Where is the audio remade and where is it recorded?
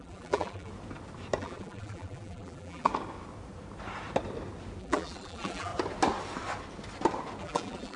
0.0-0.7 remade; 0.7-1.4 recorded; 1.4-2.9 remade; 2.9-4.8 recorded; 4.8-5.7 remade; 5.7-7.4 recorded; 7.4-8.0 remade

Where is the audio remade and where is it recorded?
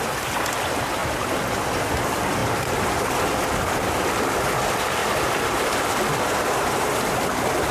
0.0-1.0 recorded; 1.0-2.0 remade; 2.0-2.4 recorded; 2.4-4.2 remade; 4.2-5.0 recorded; 5.0-7.1 remade; 7.1-7.7 recorded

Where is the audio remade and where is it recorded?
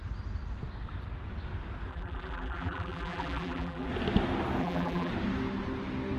0.0-1.9 recorded; 1.9-3.9 remade; 3.9-4.6 recorded; 4.6-5.1 remade; 5.1-6.2 recorded